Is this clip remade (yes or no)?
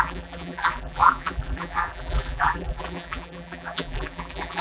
yes